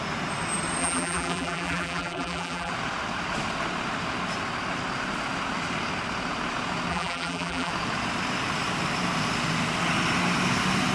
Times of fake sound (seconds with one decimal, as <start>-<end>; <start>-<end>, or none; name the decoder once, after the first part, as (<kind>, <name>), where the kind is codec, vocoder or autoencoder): 0.8-2.7 (vocoder, BigVGAN v2); 6.9-7.7

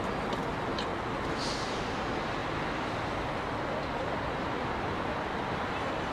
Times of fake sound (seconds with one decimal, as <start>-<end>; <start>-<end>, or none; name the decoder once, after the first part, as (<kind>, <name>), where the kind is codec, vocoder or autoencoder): none

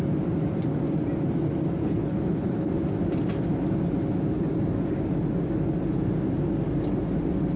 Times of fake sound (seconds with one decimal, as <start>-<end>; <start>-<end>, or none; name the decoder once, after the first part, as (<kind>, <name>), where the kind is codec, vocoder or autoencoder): 1.8-2.7 (codec, HILCodec)

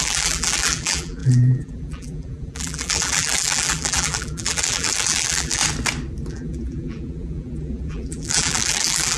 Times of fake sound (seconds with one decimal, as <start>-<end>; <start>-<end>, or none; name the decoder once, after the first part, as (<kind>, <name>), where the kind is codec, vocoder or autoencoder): 0.0-5.6 (vocoder, BigVGAN v2); 6.3-9.2

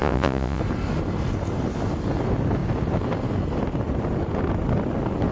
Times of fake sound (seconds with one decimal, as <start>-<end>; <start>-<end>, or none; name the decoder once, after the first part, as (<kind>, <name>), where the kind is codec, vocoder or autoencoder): 0.0-0.6 (vocoder, Vocos)

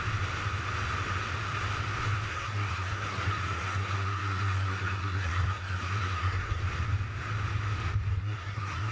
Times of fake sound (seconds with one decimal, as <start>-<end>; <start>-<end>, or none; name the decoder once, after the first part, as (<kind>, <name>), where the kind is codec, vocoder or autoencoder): 2.3-6.6 (codec, SNAC); 8.1-8.9

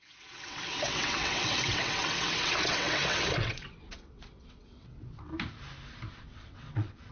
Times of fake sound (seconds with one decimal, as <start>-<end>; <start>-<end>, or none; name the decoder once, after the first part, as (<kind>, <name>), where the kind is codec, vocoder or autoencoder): 0.0-5.3 (vocoder, WaveNeXt); 6.1-7.1

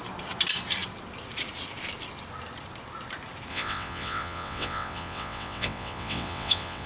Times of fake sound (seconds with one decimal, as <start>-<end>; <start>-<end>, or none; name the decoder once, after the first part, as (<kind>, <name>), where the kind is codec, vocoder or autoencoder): 3.5-6.9 (vocoder, WaveNeXt)